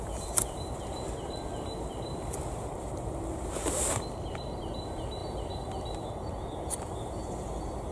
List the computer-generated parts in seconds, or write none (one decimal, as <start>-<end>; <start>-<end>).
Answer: none